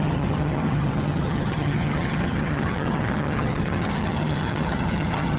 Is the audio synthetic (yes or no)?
yes